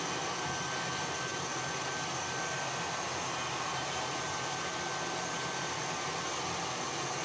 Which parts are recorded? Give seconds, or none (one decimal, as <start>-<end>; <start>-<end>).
0.0-7.2